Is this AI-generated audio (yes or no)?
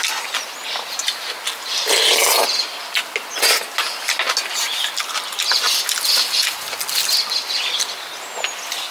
no